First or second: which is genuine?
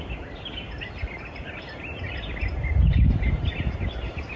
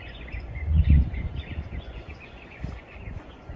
first